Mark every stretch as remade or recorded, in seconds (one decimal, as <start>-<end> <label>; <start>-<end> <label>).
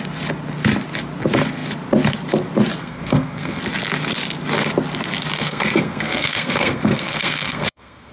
0.0-2.8 recorded; 2.8-3.6 remade; 3.6-5.4 recorded; 5.4-8.1 remade